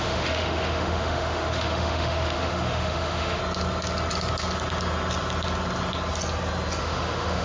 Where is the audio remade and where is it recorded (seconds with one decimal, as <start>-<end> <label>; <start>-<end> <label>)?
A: 0.0-3.4 remade; 3.4-6.8 recorded; 6.8-7.4 remade